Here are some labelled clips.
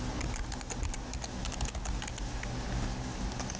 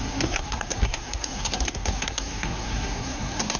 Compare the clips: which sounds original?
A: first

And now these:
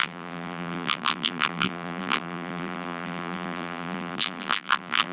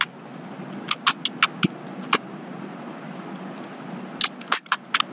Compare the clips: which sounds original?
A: second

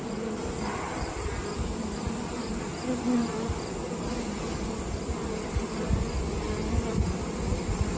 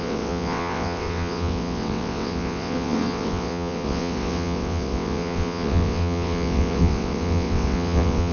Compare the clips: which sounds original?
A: first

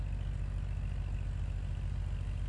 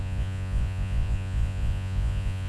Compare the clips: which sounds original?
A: first